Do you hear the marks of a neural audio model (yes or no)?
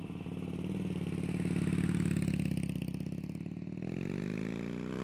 no